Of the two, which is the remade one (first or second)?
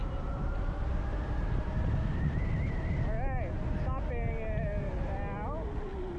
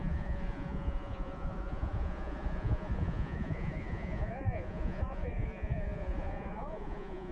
second